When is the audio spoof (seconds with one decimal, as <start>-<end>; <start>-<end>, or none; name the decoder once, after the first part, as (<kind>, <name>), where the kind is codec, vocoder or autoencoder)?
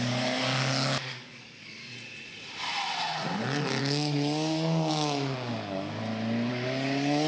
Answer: 0.0-1.8 (codec, DAC); 3.8-6.0; 6.5-7.3